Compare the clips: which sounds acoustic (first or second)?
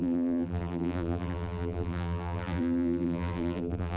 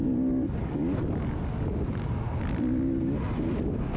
second